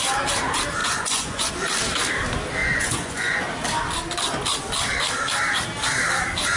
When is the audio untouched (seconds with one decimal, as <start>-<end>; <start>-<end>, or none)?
0.0-0.8; 1.5-2.6; 3.4-6.6